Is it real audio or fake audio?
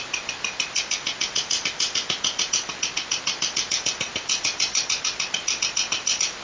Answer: real